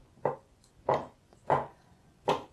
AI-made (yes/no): yes